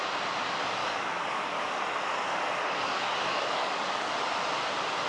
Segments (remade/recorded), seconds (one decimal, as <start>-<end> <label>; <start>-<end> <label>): 0.0-0.8 recorded; 0.8-1.8 remade; 1.8-2.3 recorded; 2.3-4.2 remade; 4.2-5.1 recorded